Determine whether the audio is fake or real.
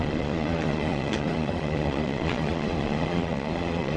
fake